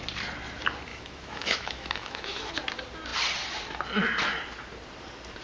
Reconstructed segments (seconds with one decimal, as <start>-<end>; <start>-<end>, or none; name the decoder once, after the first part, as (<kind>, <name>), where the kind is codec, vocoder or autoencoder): 0.9-2.5 (autoencoder, DAC-VAE)